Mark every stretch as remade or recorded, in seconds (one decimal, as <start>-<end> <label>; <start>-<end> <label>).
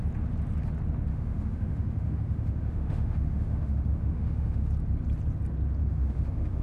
0.0-1.1 recorded; 1.1-4.7 remade; 4.7-5.8 recorded; 5.8-6.6 remade